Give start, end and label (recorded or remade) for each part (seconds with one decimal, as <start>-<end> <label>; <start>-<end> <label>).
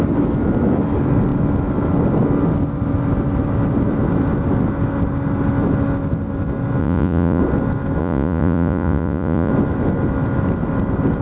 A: 0.0-6.8 recorded; 6.8-7.4 remade; 7.4-8.0 recorded; 8.0-9.5 remade; 9.5-11.2 recorded